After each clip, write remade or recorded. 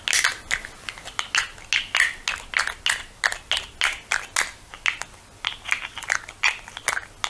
recorded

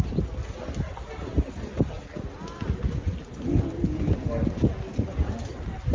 recorded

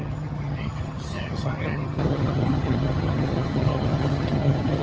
remade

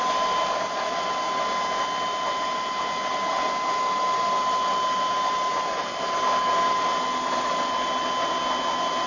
recorded